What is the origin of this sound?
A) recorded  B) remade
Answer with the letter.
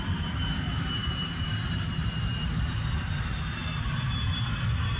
B